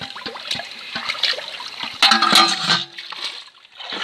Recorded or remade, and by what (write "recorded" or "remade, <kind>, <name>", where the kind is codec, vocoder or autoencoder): recorded